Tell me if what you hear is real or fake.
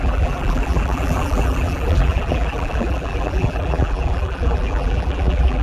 fake